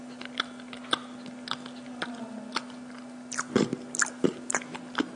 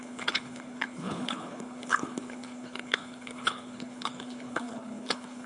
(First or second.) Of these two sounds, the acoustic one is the first